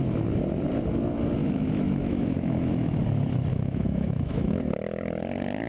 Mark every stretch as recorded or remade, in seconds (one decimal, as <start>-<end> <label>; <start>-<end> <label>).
0.0-1.4 recorded; 1.4-3.0 remade; 3.0-3.5 recorded; 3.5-4.6 remade; 4.6-5.7 recorded

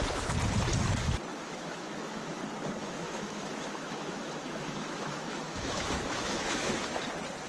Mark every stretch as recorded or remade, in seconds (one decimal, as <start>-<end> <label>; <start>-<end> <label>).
0.0-1.3 recorded; 1.3-2.4 remade; 2.4-2.8 recorded; 2.8-7.0 remade; 7.0-7.5 recorded

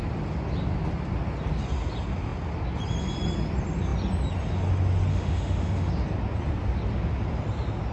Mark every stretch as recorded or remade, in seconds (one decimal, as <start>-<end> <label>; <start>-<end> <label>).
0.0-5.1 recorded; 5.1-5.9 remade; 5.9-7.9 recorded

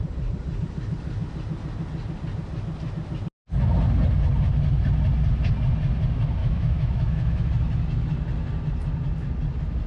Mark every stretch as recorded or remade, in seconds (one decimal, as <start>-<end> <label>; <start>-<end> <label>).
0.0-6.4 recorded; 6.4-7.5 remade; 7.5-9.9 recorded